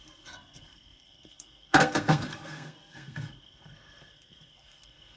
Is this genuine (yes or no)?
no